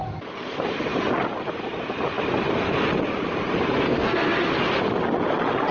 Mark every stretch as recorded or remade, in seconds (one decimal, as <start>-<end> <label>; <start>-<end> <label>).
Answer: 0.0-3.9 recorded; 3.9-4.5 remade; 4.5-5.7 recorded